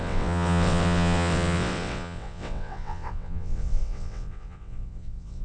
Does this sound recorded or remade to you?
remade